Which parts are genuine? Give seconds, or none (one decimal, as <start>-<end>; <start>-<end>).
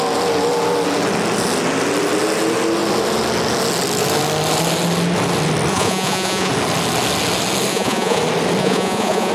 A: 0.0-5.7; 6.5-7.7; 8.2-8.6